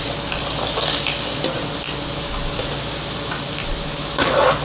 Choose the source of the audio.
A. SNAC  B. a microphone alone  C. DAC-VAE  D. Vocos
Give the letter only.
B